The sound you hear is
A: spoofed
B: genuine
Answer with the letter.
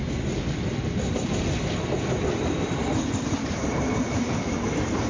B